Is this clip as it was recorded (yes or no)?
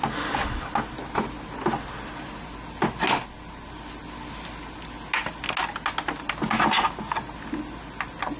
yes